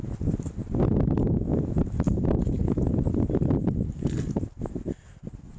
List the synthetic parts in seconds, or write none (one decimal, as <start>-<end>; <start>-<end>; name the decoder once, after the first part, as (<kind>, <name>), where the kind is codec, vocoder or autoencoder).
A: none